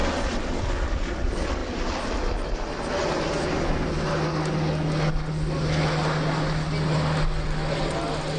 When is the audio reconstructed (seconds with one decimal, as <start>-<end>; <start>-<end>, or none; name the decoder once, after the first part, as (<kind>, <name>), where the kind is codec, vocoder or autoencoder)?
none